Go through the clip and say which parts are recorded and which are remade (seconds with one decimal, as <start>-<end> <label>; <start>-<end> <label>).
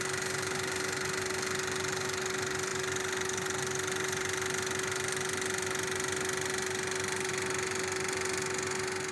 0.0-9.1 recorded